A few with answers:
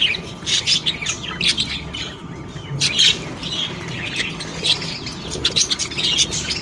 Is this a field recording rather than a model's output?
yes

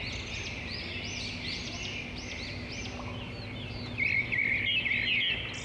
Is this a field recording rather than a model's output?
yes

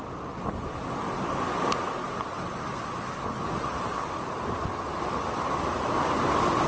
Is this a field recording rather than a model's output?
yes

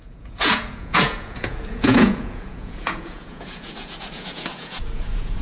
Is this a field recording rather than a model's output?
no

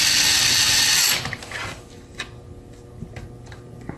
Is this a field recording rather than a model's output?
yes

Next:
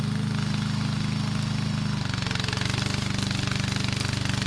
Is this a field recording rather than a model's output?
yes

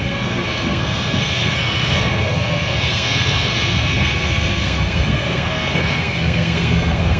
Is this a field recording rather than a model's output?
no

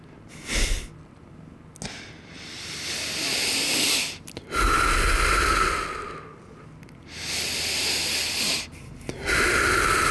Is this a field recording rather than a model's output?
yes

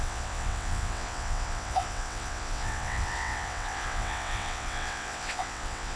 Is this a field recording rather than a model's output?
no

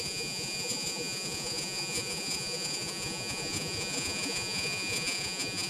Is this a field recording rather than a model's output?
no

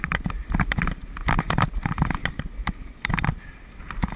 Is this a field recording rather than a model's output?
yes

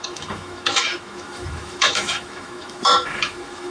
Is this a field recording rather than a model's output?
no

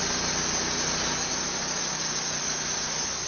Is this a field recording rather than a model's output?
yes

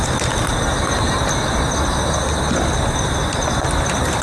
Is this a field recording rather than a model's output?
yes